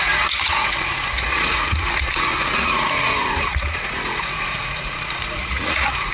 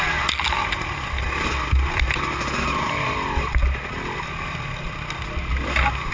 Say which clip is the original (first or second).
second